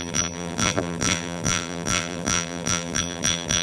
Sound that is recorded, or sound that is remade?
remade